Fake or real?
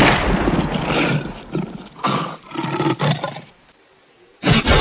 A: real